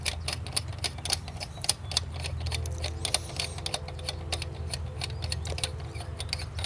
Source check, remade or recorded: recorded